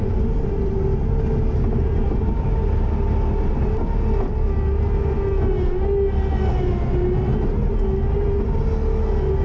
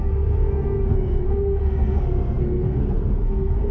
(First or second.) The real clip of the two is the first